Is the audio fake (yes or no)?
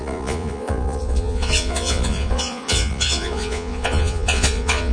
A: yes